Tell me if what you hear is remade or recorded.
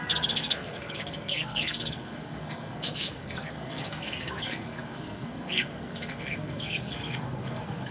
remade